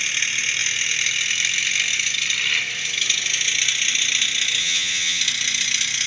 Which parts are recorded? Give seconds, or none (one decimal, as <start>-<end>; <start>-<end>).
0.0-4.6; 5.2-6.1